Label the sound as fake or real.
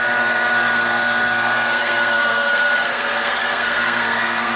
fake